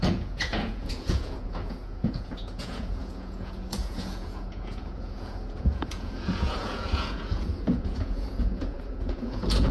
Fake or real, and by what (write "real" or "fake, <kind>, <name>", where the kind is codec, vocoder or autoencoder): fake, vocoder, Vocos